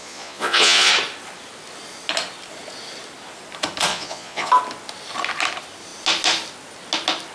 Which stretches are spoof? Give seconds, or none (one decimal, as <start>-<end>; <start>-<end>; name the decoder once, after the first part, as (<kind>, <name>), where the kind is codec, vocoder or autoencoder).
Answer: 0.0-0.9 (vocoder, Vocos); 3.9-4.5